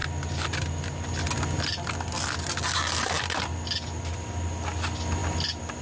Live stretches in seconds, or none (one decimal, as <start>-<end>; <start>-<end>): 0.0-5.8